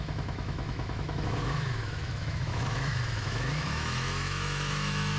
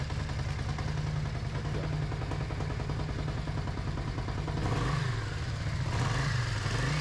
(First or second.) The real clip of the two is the second